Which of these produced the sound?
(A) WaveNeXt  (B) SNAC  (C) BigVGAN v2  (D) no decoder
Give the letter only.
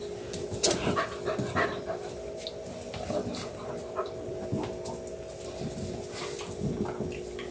D